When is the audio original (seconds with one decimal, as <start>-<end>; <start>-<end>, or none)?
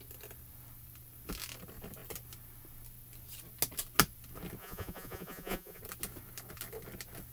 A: 0.0-4.6; 5.8-7.3